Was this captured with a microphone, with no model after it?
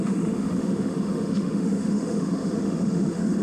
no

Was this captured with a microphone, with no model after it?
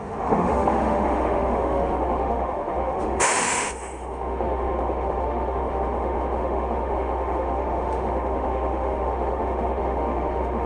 no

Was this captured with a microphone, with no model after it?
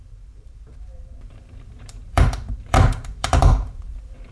no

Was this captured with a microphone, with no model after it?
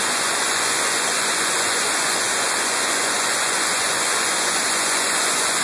no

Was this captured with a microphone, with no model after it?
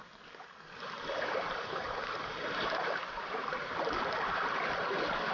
yes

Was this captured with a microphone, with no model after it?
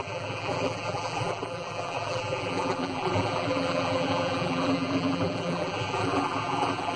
no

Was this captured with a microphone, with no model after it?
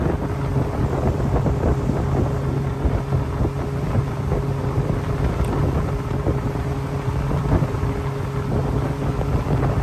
yes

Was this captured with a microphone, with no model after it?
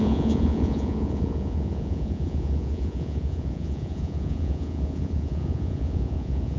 no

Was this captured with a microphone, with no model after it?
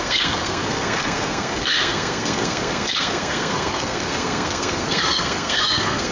no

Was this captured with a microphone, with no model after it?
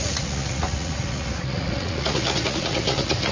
no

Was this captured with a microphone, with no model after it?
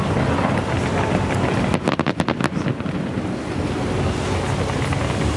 yes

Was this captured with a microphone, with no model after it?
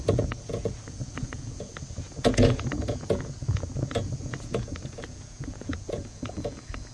no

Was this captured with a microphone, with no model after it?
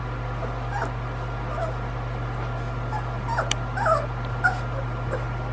yes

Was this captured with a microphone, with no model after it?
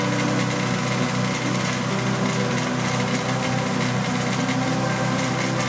yes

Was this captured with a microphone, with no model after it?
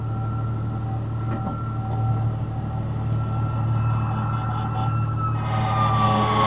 yes